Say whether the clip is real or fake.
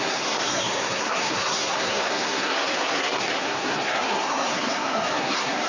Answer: fake